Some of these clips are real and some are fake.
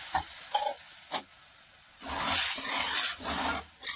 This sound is real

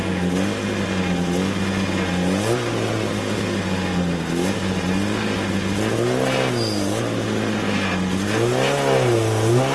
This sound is real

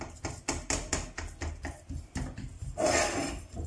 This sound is real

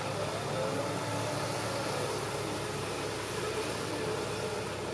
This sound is real